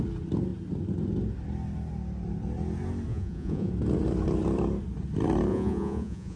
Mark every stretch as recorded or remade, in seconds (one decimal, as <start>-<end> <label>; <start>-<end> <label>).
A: 0.0-3.1 recorded; 3.1-3.7 remade; 3.7-5.5 recorded; 5.5-6.4 remade